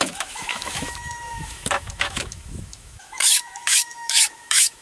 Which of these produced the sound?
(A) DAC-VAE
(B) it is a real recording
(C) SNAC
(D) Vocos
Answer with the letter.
A